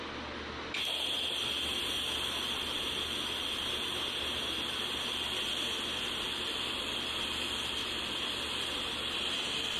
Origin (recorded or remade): recorded